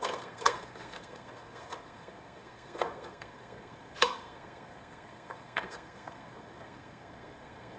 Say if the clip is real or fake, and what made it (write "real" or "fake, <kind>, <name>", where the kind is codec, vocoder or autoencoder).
fake, codec, SNAC